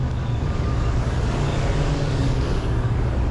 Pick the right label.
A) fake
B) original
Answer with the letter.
A